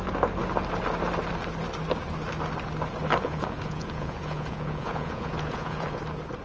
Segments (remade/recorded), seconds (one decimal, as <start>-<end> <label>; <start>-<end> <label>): 0.0-3.2 recorded; 3.2-6.0 remade; 6.0-6.4 recorded